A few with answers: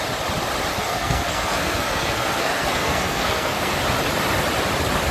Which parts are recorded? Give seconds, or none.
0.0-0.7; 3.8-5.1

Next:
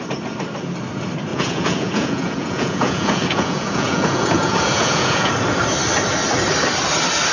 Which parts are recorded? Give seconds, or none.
0.0-1.3; 5.3-7.3

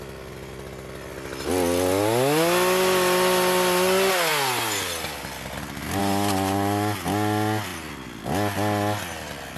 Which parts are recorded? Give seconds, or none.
0.0-9.6

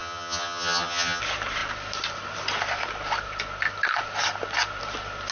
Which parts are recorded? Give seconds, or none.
1.2-5.3

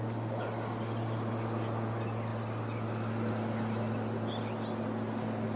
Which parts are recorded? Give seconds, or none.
0.0-5.6

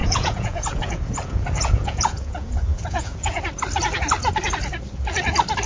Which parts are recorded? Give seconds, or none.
3.4-5.7

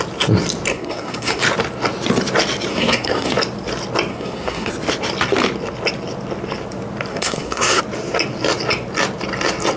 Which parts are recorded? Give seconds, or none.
0.0-0.7; 1.4-2.7; 3.3-4.1; 4.7-7.1; 7.8-9.8